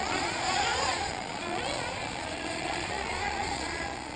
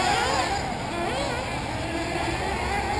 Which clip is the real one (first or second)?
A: second